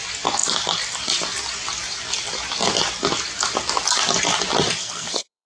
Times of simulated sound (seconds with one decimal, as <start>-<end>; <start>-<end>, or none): 4.8-5.5